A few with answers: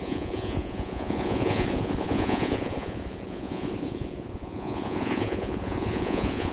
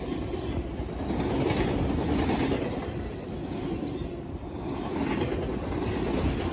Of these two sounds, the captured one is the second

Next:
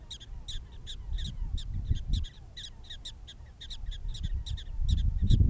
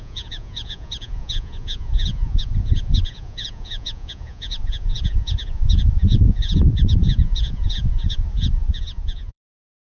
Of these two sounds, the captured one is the first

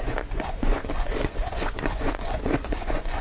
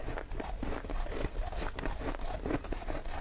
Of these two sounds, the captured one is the second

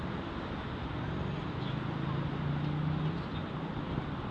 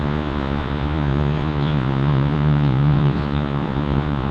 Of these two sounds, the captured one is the first